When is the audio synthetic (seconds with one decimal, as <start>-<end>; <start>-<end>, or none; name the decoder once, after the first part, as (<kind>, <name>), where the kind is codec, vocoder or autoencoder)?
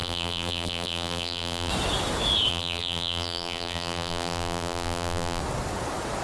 0.0-1.7 (vocoder, BigVGAN v2); 2.5-5.4